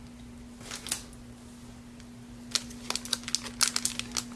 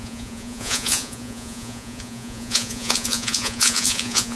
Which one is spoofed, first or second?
second